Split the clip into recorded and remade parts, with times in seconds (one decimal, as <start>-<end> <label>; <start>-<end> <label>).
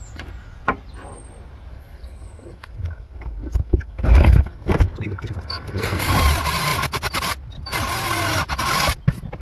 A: 0.0-1.7 recorded; 1.7-6.1 remade; 6.1-9.4 recorded